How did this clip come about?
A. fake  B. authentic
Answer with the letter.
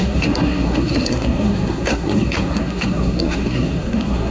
A